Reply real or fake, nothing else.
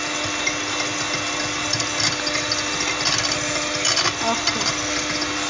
real